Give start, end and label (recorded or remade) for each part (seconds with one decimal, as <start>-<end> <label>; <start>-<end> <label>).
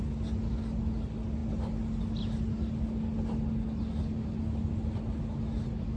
0.0-6.0 recorded